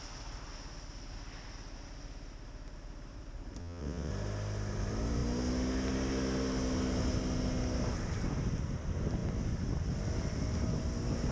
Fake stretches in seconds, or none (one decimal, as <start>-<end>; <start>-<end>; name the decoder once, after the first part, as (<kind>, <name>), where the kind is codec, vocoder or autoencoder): 3.6-4.1 (vocoder, WaveNeXt)